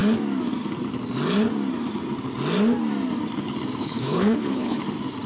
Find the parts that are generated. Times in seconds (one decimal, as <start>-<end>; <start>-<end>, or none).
3.8-4.8